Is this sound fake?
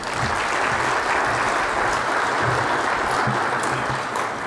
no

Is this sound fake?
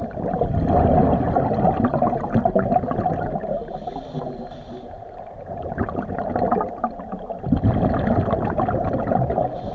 no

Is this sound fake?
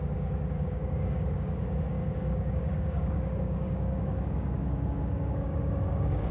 yes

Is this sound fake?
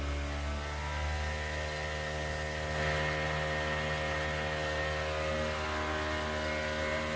no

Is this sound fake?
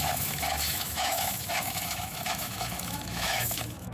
yes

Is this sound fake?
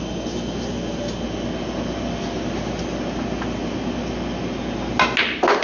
no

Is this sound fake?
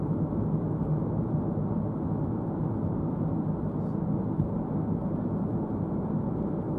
no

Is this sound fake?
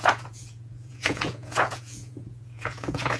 yes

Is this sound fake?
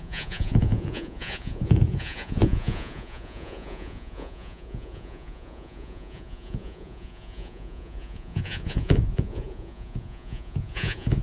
yes